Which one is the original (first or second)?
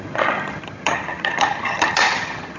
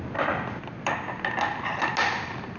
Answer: second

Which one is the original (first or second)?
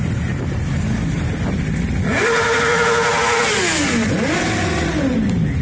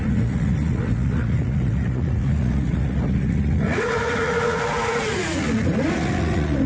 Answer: first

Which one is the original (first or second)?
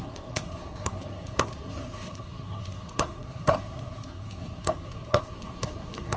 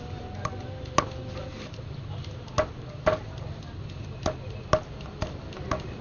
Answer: second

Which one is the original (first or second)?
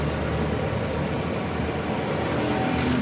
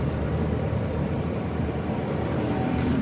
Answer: first